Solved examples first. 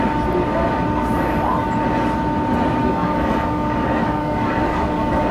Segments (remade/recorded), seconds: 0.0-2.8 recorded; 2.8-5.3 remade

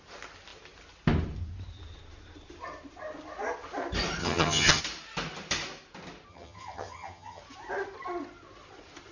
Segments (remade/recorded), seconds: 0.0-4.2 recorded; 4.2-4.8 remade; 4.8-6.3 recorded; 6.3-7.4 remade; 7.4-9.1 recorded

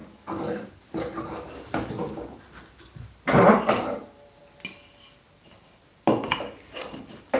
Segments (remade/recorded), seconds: 0.0-7.4 recorded